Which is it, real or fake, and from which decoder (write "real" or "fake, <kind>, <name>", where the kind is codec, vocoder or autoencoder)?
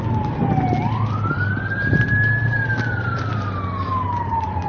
real